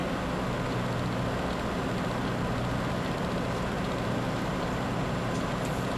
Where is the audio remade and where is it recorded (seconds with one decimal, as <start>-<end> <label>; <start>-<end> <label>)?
0.0-6.0 recorded